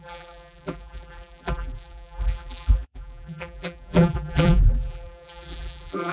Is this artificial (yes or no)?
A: yes